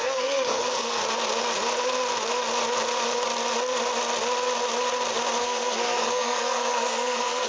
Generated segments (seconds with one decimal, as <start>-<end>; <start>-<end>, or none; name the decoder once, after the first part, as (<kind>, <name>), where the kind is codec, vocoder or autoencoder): 0.0-1.0 (codec, SNAC); 5.4-7.5